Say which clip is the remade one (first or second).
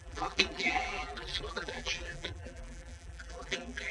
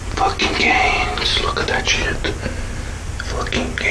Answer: first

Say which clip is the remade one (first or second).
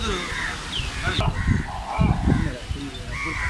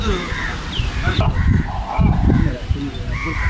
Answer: second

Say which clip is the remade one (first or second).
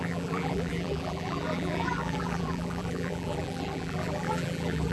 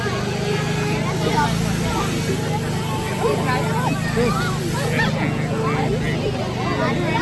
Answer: first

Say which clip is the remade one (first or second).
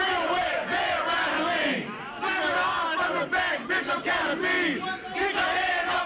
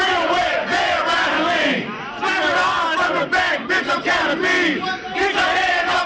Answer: second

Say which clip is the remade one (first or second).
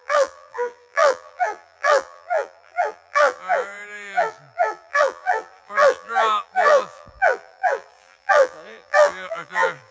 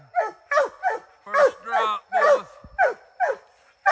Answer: first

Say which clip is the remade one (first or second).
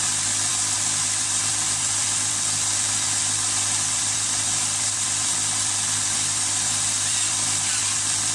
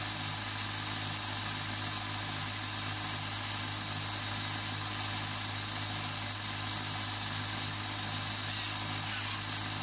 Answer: first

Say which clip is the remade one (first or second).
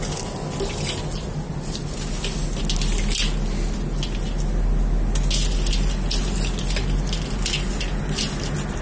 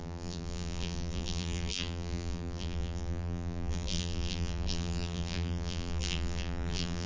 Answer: second